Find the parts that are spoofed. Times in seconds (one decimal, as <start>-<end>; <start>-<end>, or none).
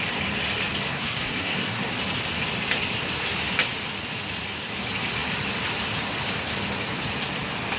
0.9-1.9